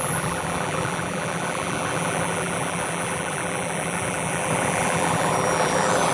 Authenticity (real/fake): fake